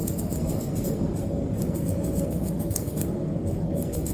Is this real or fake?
fake